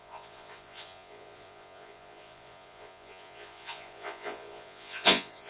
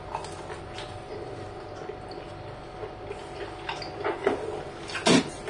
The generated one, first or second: first